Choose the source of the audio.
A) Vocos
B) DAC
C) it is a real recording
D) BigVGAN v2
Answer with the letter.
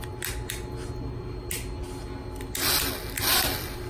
C